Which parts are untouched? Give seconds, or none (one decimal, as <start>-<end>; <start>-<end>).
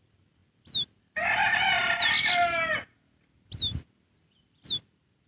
0.0-5.3